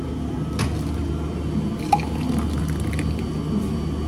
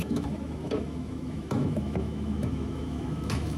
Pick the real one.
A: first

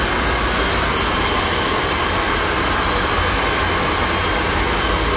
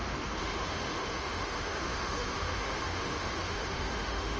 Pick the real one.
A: first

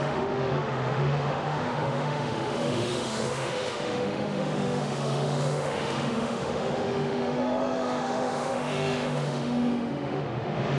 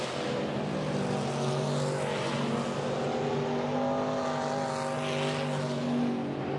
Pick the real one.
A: second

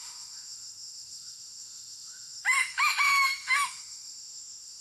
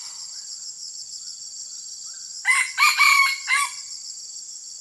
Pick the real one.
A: second